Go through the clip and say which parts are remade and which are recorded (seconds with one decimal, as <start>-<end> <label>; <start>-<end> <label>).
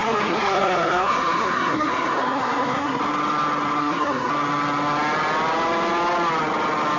0.0-3.0 remade; 3.0-3.8 recorded; 3.8-4.3 remade; 4.3-7.0 recorded